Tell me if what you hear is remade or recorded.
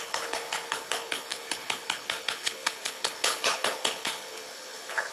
remade